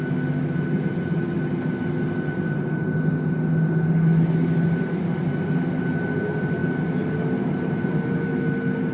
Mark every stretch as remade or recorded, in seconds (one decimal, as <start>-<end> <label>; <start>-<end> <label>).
0.0-8.9 recorded